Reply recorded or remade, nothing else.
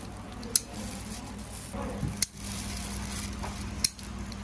recorded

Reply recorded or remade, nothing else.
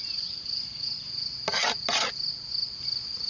recorded